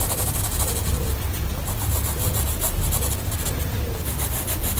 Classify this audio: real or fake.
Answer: real